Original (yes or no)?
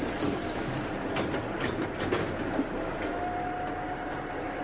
yes